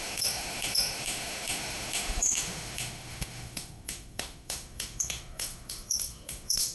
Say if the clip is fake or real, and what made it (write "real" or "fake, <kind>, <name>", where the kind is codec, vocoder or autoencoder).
fake, autoencoder, DAC-VAE